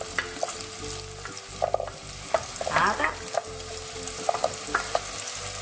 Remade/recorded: recorded